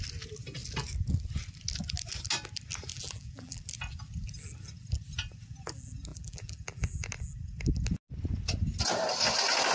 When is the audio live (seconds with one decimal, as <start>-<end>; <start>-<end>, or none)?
0.0-2.9; 3.6-6.1; 7.1-9.7